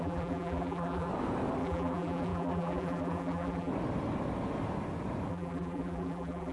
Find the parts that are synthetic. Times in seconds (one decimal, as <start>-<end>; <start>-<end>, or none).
0.0-1.1; 1.6-3.7; 5.3-6.5